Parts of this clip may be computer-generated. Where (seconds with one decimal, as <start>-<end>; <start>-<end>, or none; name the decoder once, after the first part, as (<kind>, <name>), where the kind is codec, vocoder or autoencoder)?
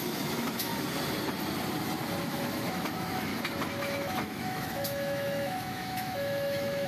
0.0-0.7 (autoencoder, DAC-VAE); 2.3-3.3; 3.8-6.9